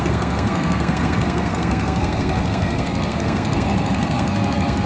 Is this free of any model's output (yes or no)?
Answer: no